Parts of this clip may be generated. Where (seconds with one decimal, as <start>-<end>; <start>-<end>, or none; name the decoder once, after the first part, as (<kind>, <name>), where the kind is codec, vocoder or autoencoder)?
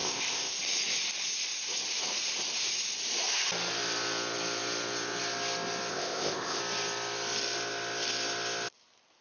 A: 0.0-0.5 (codec, ZipCodec); 5.9-6.6